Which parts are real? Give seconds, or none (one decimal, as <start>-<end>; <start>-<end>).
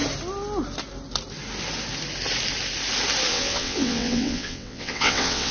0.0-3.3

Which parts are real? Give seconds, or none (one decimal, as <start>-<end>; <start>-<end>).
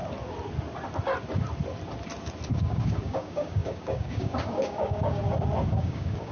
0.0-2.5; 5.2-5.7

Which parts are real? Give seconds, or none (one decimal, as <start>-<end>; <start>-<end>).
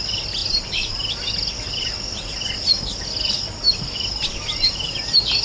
0.0-5.4